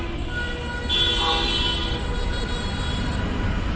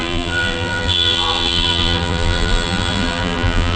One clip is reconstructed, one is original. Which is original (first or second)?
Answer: first